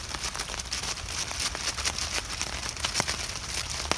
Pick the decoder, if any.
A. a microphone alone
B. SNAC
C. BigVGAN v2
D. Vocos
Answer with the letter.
A